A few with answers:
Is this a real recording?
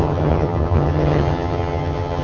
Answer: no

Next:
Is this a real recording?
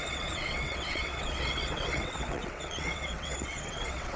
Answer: no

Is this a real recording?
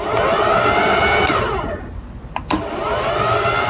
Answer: yes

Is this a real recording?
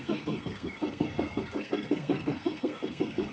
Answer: no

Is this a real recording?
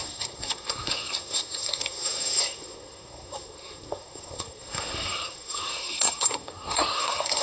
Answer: no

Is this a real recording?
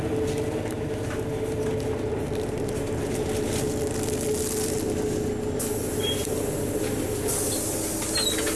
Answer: yes